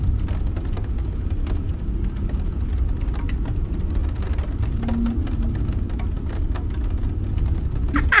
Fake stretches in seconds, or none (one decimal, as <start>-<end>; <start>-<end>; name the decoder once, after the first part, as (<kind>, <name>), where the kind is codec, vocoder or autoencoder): 0.0-1.7 (vocoder, BigVGAN v2); 2.5-4.0; 7.4-8.2